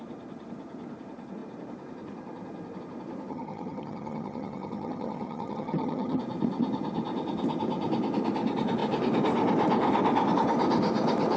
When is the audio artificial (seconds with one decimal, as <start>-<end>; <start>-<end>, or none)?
3.3-6.2